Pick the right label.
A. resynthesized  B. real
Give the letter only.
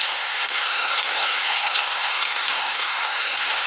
A